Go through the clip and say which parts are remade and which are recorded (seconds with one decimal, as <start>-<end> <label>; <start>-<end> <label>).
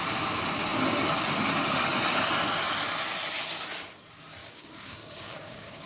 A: 0.0-4.4 recorded; 4.4-5.9 remade